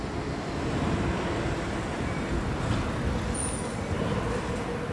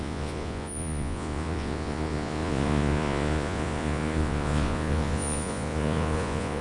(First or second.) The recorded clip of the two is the first